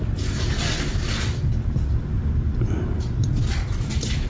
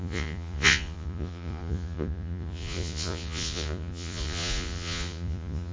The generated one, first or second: second